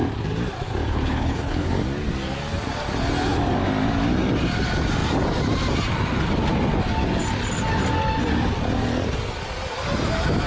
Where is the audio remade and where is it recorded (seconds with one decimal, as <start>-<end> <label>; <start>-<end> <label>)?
0.0-0.9 recorded; 0.9-1.7 remade; 1.7-10.5 recorded